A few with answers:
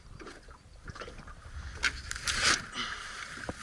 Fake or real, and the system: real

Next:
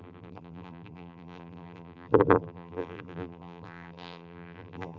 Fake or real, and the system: fake, vocoder, BigVGAN v2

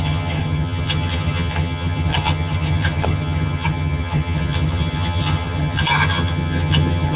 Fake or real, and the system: fake, vocoder, HiFi-GAN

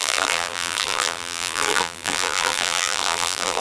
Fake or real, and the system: fake, vocoder, BigVGAN v2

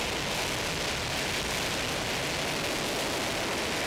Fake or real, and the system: real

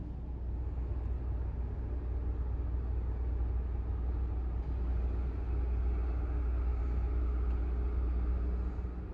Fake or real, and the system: real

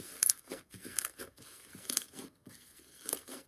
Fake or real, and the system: fake, codec, SNAC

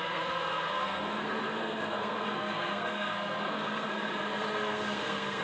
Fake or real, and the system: fake, codec, SNAC